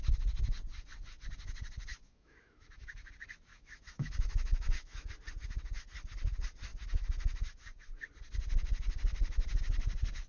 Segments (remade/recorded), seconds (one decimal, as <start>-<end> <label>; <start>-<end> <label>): 0.0-2.0 recorded; 2.0-3.1 remade; 3.1-3.5 recorded; 3.5-5.1 remade; 5.1-10.3 recorded